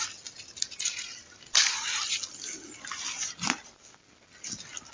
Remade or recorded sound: recorded